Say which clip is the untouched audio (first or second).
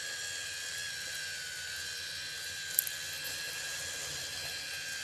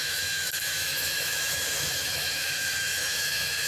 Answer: first